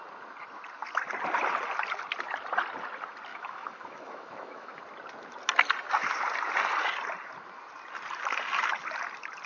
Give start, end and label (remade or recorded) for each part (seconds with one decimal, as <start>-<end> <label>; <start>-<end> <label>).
0.0-3.3 recorded; 3.3-4.8 remade; 4.8-9.5 recorded